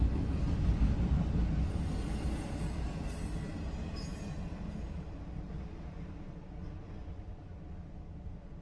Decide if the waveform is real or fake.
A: real